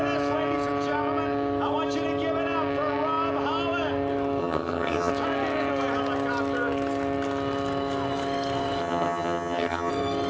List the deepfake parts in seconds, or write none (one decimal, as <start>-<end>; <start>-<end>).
4.4-5.1; 8.8-9.9